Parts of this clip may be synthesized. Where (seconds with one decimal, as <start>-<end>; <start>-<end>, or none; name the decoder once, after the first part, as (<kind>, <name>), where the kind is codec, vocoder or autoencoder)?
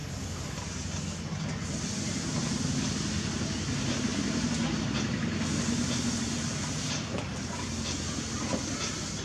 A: none